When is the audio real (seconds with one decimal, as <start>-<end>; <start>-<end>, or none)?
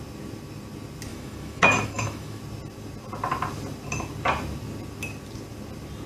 0.0-1.1; 2.4-6.1